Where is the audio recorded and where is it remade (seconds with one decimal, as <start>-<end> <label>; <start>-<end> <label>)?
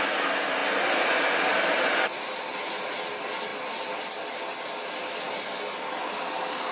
0.0-6.7 recorded